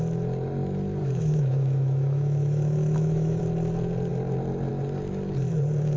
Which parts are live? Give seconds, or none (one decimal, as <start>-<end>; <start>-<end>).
0.0-1.0; 3.4-6.0